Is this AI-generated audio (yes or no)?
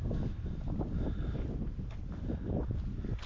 no